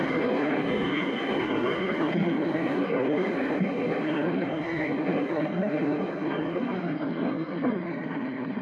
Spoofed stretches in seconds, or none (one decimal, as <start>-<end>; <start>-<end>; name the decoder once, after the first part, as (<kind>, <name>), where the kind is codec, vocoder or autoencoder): 0.0-8.6 (codec, SNAC)